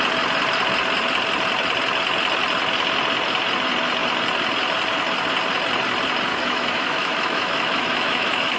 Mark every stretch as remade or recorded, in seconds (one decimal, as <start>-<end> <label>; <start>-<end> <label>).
0.0-6.3 recorded; 6.3-8.6 remade